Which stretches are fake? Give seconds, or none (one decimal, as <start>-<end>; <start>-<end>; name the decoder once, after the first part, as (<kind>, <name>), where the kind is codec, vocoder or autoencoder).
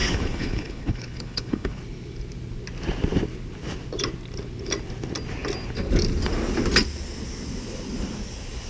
0.0-1.8 (codec, HILCodec)